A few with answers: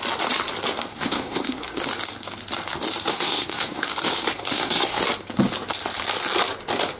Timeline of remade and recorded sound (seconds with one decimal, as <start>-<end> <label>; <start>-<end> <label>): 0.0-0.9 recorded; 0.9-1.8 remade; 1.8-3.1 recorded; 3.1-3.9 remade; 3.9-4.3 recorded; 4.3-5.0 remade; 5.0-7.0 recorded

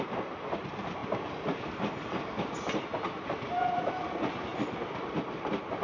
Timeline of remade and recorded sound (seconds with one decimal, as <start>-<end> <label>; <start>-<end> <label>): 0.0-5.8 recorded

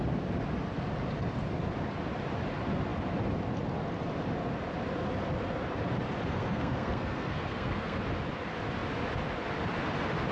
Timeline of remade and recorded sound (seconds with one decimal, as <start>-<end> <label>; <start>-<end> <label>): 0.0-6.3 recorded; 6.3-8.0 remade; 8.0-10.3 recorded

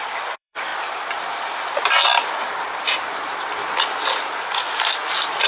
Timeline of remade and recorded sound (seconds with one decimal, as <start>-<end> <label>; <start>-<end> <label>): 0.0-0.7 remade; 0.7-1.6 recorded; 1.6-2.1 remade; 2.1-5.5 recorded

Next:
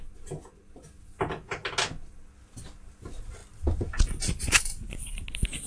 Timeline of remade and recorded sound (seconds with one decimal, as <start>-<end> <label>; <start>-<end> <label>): 0.0-5.7 recorded